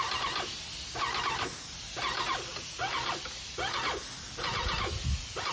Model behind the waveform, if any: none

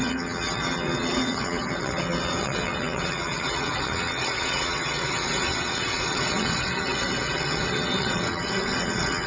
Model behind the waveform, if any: vocoder, WaveNeXt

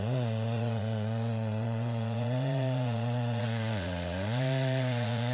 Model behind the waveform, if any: vocoder, Vocos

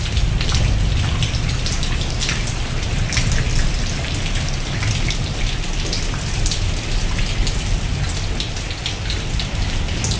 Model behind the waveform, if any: none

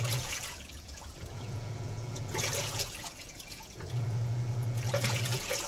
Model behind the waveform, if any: vocoder, Vocos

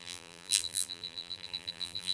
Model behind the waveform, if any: vocoder, BigVGAN v2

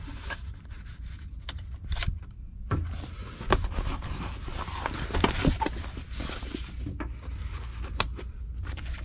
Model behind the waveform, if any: none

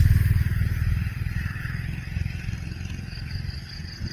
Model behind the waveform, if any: none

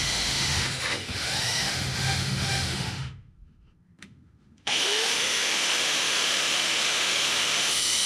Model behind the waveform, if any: autoencoder, DAC-VAE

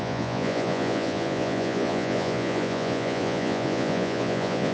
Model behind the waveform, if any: vocoder, Vocos